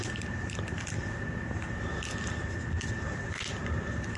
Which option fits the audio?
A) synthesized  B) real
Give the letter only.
A